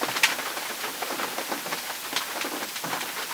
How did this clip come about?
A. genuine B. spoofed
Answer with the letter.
B